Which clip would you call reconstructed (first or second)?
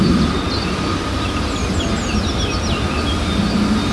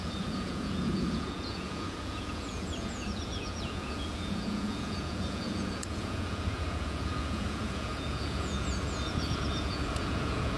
second